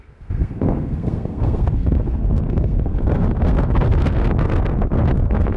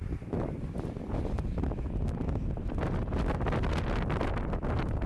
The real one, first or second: second